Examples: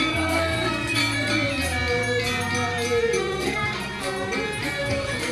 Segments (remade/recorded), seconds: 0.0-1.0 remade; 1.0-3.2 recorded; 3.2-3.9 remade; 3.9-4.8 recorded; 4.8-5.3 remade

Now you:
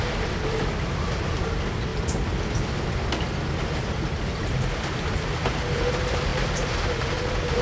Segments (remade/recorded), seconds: 0.0-7.6 recorded

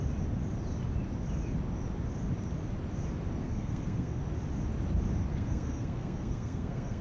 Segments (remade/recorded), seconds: 0.0-3.4 recorded; 3.4-4.2 remade; 4.2-5.3 recorded; 5.3-7.0 remade

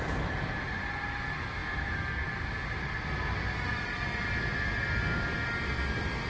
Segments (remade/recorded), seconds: 0.0-6.3 recorded

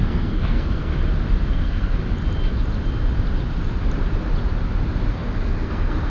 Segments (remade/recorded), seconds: 0.0-0.9 remade; 0.9-1.5 recorded; 1.5-2.0 remade; 2.0-5.1 recorded; 5.1-6.1 remade